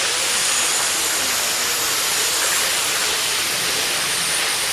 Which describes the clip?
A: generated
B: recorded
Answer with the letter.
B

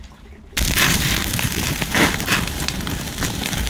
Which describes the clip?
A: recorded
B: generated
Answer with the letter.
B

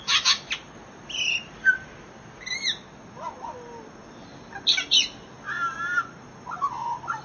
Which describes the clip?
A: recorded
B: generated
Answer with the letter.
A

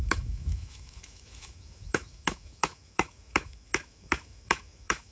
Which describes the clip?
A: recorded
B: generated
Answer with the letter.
B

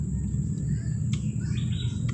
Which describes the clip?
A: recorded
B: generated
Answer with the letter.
A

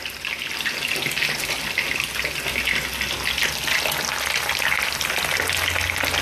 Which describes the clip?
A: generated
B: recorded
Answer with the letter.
B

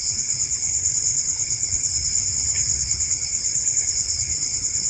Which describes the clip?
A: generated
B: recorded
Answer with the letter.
A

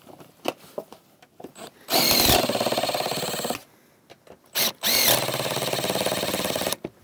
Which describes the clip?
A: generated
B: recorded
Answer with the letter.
B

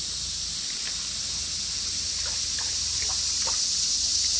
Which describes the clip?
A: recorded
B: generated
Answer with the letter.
A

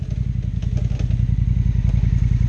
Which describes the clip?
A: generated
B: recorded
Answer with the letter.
B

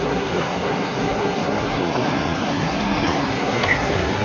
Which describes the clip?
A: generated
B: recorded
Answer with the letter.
A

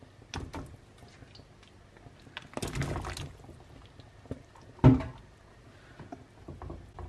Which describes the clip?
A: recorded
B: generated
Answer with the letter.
A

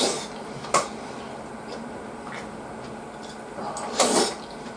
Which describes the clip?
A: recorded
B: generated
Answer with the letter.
A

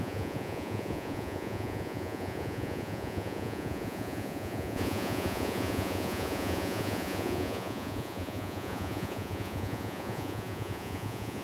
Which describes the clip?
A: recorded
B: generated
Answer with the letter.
B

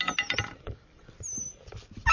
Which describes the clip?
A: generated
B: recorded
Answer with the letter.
B